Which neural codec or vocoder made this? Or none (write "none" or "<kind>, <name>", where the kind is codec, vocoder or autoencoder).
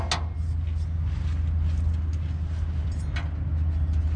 none